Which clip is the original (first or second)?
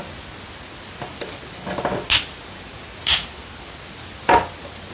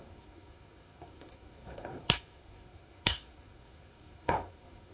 first